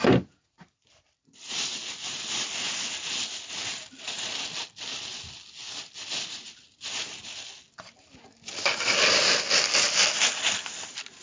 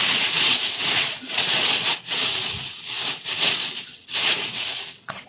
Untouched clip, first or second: first